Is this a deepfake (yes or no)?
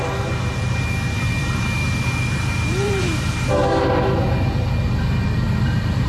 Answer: yes